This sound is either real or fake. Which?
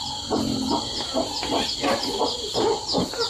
real